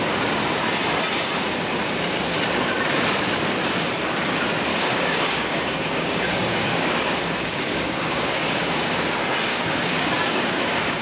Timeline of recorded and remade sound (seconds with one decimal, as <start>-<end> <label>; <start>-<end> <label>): 0.0-4.7 recorded; 4.7-9.0 remade; 9.0-9.5 recorded; 9.5-11.0 remade

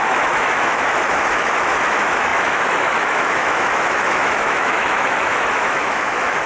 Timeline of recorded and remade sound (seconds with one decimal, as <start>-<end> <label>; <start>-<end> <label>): 0.0-6.5 remade

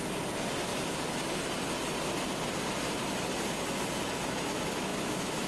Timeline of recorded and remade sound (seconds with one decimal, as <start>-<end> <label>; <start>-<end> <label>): 0.0-4.9 recorded; 4.9-5.5 remade

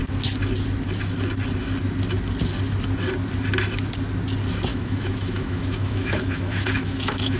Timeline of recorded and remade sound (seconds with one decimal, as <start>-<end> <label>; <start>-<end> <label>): 0.0-4.7 recorded; 4.7-7.4 remade

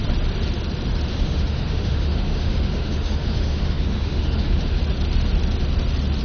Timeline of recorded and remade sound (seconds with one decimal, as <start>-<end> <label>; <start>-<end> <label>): 0.0-1.1 recorded; 1.1-4.8 remade; 4.8-6.2 recorded

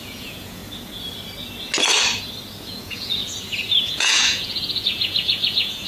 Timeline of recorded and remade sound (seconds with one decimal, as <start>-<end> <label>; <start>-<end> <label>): 0.0-0.6 remade; 0.6-2.6 recorded; 2.6-3.2 remade; 3.2-3.8 recorded; 3.8-5.9 remade